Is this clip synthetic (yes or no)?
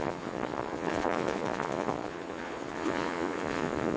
yes